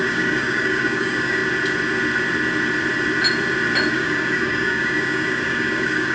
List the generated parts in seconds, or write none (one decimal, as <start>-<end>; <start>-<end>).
0.0-1.4; 3.9-6.1